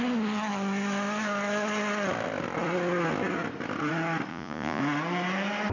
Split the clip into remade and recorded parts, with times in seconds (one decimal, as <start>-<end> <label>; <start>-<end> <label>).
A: 0.0-4.3 recorded; 4.3-4.8 remade; 4.8-5.7 recorded